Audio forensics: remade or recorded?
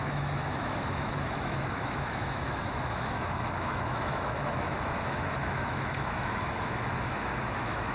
remade